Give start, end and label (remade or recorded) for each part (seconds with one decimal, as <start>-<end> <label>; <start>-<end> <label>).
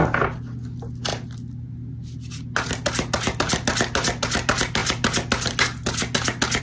0.0-6.6 recorded